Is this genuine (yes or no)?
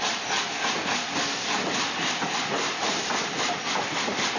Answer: yes